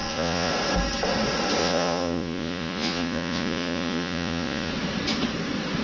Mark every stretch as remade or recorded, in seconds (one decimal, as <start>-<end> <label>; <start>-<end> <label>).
0.0-0.5 remade; 0.5-1.6 recorded; 1.6-4.7 remade; 4.7-5.8 recorded